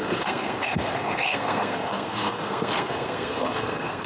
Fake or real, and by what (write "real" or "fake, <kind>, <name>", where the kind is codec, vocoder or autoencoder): fake, codec, SNAC